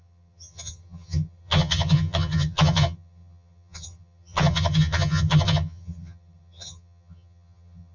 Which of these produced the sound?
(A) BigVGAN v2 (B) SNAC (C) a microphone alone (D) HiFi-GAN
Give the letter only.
D